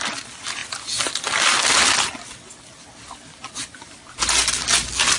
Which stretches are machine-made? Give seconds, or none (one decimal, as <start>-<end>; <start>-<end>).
none